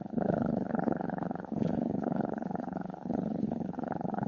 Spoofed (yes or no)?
yes